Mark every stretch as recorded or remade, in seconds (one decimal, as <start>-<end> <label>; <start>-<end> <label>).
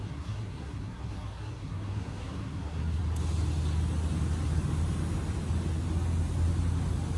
0.0-3.0 remade; 3.0-7.2 recorded